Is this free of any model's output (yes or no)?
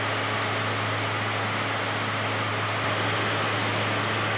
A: yes